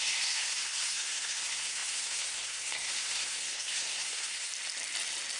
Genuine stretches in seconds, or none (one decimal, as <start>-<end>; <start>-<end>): 4.5-5.4